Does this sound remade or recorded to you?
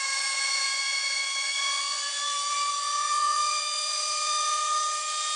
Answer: remade